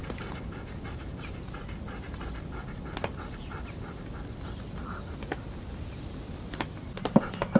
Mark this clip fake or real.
real